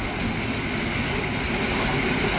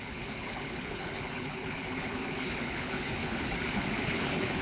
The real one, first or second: first